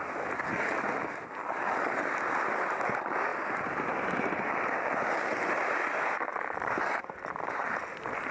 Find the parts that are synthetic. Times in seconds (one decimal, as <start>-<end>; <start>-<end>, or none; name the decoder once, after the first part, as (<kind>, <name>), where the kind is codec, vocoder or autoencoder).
6.3-8.3 (vocoder, BigVGAN v2)